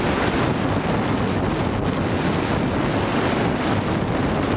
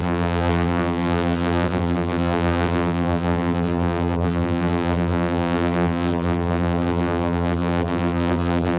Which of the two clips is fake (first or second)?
second